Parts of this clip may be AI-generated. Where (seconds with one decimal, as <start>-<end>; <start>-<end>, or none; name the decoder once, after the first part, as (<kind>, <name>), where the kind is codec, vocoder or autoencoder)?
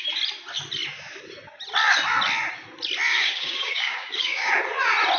3.1-4.5 (codec, DAC)